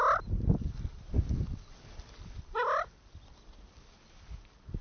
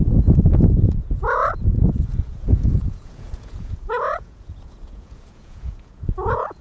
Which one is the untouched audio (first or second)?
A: first